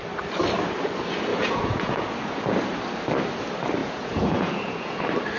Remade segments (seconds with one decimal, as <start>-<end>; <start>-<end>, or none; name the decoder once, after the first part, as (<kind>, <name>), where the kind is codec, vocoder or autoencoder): 1.3-2.3 (vocoder, Vocos); 3.8-5.0